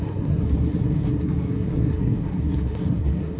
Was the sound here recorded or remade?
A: remade